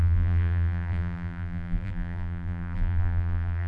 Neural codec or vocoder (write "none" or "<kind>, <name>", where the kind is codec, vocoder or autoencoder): vocoder, BigVGAN v2